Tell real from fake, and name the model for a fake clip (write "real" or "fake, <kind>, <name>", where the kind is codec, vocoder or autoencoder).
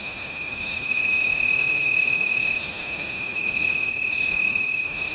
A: fake, autoencoder, DAC-VAE